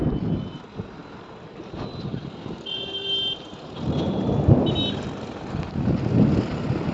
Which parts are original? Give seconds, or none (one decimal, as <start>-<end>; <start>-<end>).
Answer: 0.0-6.9